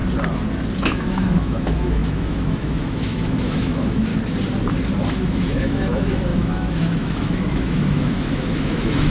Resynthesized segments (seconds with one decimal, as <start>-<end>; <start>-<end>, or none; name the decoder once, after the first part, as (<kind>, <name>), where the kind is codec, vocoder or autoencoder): 0.8-4.1 (autoencoder, DAC-VAE); 5.1-9.1